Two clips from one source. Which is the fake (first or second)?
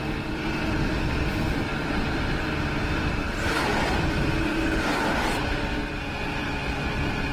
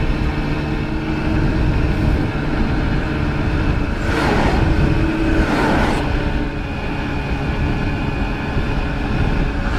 first